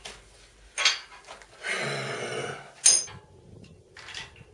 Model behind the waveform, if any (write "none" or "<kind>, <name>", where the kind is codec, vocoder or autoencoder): none